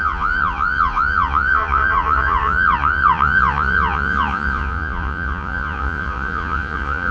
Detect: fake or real fake